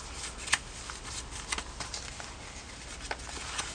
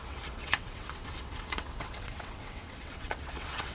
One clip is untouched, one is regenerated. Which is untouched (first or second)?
first